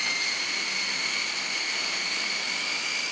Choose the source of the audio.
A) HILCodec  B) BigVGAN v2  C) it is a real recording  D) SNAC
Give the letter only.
C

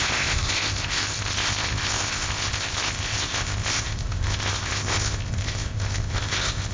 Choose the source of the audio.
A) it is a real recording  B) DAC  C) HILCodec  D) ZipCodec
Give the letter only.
D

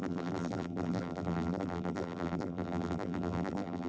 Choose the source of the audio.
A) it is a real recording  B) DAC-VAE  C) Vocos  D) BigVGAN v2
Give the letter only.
D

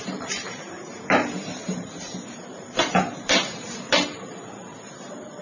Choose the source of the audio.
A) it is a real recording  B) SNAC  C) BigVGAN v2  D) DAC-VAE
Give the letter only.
C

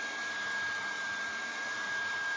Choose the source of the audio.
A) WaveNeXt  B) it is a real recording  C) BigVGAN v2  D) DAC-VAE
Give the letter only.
C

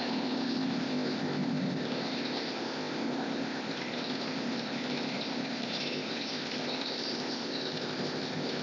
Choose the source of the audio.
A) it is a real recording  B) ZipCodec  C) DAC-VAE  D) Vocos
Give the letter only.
B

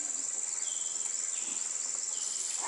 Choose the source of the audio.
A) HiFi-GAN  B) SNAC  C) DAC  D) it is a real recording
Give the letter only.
D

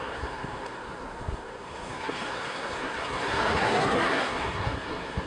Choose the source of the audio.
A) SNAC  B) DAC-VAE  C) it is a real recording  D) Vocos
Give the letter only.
A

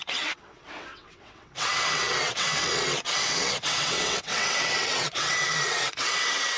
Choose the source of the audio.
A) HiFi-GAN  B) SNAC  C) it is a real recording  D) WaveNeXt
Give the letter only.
D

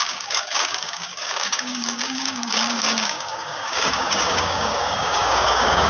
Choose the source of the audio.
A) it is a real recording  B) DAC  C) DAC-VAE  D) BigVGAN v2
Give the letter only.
B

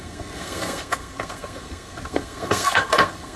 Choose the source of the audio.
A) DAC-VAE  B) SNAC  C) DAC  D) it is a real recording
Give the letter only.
B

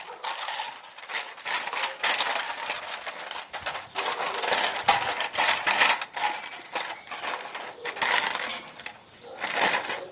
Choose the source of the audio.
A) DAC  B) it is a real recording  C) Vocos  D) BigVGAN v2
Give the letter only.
B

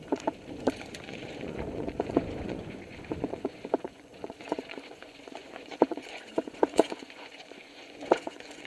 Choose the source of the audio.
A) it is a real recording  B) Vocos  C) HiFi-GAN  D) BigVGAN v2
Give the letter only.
B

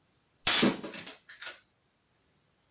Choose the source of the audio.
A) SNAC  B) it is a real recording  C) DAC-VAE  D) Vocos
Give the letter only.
B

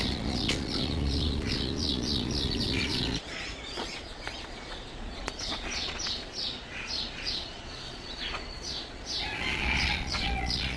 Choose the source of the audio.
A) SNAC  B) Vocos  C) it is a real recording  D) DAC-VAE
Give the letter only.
B